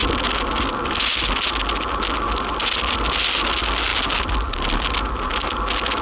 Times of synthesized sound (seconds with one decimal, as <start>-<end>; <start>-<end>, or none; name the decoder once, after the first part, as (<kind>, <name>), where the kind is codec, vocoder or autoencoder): none

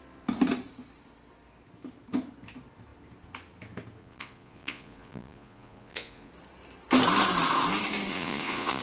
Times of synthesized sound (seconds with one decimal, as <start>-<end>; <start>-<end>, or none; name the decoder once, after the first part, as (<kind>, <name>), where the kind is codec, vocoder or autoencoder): 4.0-6.3 (vocoder, Vocos); 8.1-8.8

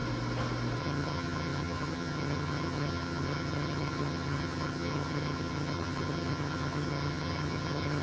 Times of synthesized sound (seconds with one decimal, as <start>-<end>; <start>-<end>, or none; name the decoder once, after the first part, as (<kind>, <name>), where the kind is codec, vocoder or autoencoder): 0.8-8.0 (vocoder, HiFi-GAN)

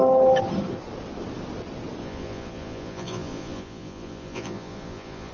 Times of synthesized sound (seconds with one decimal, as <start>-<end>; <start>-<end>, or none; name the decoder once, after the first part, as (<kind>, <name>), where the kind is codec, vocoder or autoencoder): 2.0-5.3 (vocoder, Vocos)

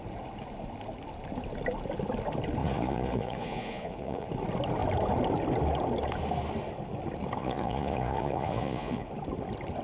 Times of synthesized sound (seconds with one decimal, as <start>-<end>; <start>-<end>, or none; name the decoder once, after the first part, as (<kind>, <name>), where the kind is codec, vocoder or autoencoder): 2.6-4.3 (vocoder, Vocos); 7.4-9.1

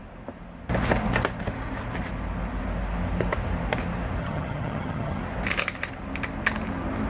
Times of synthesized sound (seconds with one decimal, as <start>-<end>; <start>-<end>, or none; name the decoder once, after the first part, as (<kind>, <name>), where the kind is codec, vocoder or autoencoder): 4.2-5.2 (vocoder, HiFi-GAN)

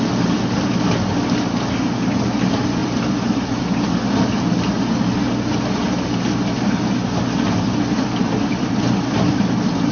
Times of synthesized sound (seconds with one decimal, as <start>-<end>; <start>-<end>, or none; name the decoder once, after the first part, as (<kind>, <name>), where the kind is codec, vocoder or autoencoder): 2.8-3.6 (vocoder, BigVGAN v2); 8.5-9.9

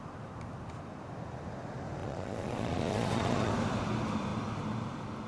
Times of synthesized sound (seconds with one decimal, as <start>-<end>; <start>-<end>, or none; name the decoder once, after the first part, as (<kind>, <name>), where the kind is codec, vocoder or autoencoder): 2.0-3.5 (vocoder, Vocos)